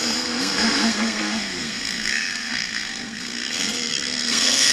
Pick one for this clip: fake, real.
fake